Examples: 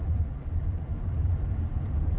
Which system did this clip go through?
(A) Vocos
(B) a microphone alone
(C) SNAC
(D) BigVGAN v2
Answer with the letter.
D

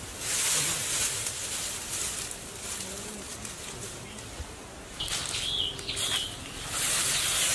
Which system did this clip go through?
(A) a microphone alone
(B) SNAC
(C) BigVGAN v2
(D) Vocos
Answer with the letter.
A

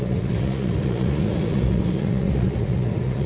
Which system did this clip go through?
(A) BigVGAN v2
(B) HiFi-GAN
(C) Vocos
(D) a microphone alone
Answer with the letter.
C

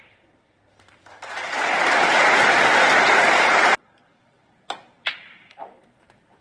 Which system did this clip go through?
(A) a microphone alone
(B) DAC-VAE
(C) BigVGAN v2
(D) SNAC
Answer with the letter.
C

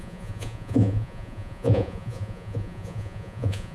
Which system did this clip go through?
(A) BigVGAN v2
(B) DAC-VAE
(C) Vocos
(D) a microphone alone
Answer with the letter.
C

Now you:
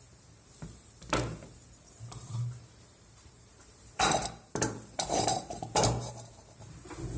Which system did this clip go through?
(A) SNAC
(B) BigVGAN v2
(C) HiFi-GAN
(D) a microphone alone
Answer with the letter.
B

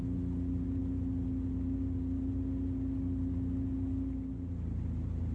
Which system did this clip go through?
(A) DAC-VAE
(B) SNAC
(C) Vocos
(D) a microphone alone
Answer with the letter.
D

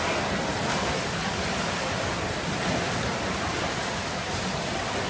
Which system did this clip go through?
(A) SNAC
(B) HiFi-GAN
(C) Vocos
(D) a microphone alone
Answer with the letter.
D